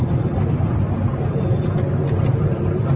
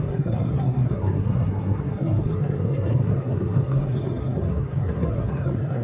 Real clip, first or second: first